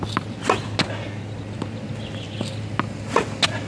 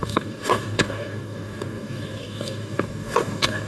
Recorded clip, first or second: first